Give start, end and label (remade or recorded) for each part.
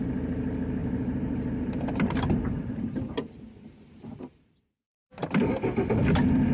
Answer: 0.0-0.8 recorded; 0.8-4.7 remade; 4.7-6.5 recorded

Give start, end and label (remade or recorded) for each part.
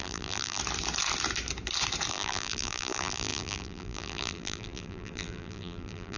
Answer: 0.0-0.6 remade; 0.6-2.1 recorded; 2.1-6.2 remade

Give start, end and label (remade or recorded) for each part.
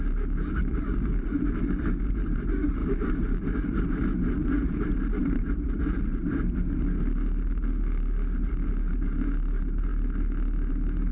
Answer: 0.0-2.8 recorded; 2.8-5.8 remade; 5.8-11.1 recorded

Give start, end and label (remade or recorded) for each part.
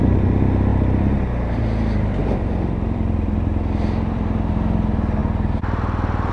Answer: 0.0-0.7 recorded; 0.7-4.5 remade; 4.5-6.3 recorded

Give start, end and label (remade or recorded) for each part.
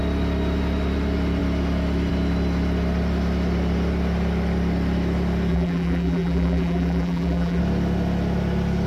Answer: 0.0-5.5 recorded; 5.5-7.6 remade; 7.6-8.9 recorded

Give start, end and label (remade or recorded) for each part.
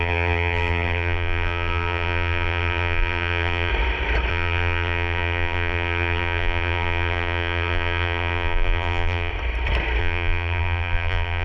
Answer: 0.0-3.7 remade; 3.7-4.3 recorded; 4.3-9.3 remade; 9.3-10.0 recorded; 10.0-11.4 remade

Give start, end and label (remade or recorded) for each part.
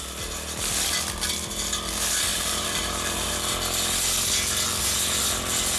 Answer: 0.0-2.3 recorded; 2.3-3.5 remade; 3.5-5.8 recorded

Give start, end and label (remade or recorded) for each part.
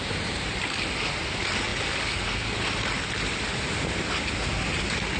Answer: 0.0-0.6 remade; 0.6-5.2 recorded